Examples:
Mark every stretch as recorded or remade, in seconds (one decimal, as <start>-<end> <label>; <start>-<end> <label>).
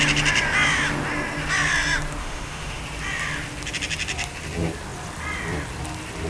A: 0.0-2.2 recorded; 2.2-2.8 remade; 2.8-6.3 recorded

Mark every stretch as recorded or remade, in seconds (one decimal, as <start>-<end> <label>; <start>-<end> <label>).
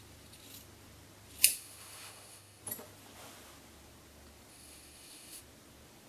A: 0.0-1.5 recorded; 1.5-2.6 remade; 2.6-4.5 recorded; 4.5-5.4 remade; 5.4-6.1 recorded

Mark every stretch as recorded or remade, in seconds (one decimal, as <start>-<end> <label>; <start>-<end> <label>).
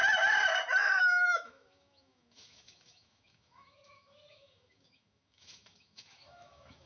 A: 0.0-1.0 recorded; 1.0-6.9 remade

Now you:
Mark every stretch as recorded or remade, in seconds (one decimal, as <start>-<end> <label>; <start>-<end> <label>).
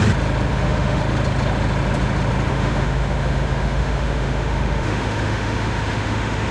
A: 0.0-0.5 recorded; 0.5-1.0 remade; 1.0-2.5 recorded; 2.5-6.5 remade